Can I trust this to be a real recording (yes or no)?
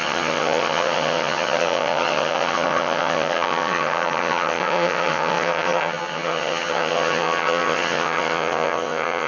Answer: no